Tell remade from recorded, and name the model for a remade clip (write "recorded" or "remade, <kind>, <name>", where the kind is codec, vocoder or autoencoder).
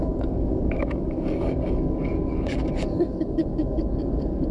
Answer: remade, codec, DAC